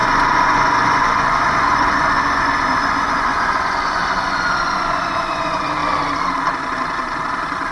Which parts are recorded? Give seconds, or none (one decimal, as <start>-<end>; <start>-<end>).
5.8-7.7